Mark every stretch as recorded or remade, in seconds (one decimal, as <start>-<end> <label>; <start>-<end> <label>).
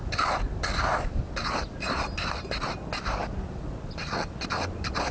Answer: 0.0-5.1 recorded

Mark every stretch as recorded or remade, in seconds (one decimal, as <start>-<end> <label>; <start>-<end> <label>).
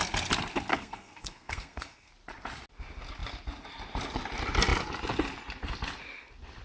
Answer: 0.0-0.7 recorded; 0.7-2.1 remade; 2.1-6.6 recorded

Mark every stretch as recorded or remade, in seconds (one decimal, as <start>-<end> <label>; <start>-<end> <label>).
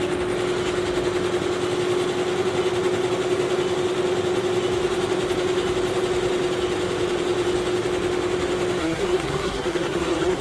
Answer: 0.0-8.8 recorded; 8.8-10.4 remade